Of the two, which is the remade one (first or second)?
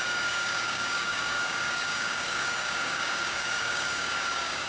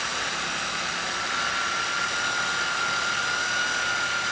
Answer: first